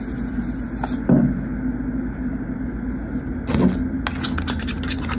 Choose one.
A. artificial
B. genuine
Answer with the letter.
B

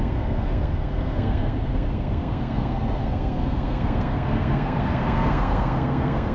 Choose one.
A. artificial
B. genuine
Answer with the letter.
A